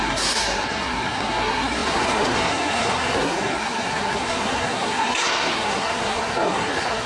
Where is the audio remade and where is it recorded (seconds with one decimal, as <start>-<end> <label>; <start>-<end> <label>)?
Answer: 0.0-7.1 remade